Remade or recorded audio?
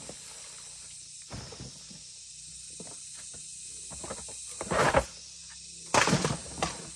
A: recorded